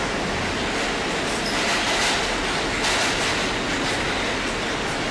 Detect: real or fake real